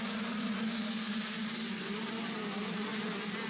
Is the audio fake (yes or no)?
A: no